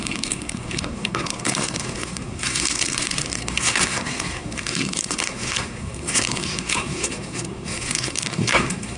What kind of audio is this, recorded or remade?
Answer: remade